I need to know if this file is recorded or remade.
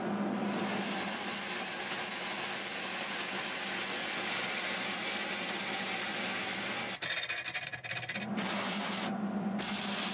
recorded